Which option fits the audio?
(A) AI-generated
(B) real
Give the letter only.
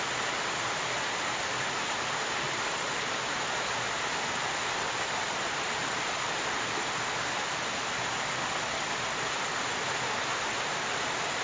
B